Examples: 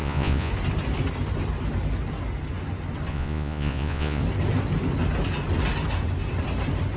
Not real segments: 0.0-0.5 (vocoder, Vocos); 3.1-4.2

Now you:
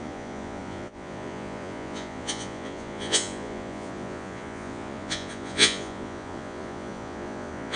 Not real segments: 0.0-7.8 (vocoder, Vocos)

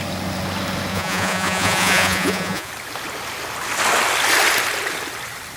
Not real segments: 0.9-2.7 (vocoder, Vocos)

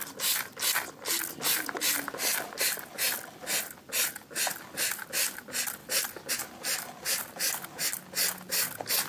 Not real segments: none

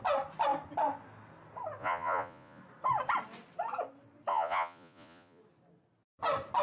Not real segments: 1.8-2.6 (vocoder, Vocos); 4.3-5.4

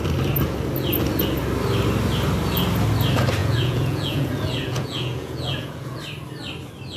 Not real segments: 3.4-6.0 (vocoder, Vocos)

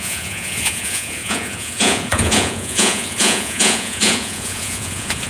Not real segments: 0.0-5.3 (vocoder, Vocos)

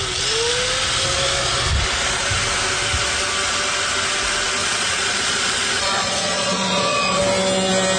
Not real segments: 4.6-7.2 (vocoder, Vocos)